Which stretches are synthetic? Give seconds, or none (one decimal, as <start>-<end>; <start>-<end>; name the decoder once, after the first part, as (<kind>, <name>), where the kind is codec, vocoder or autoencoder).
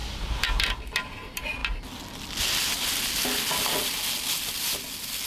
0.0-0.8 (vocoder, BigVGAN v2)